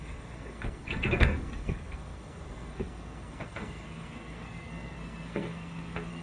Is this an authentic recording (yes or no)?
no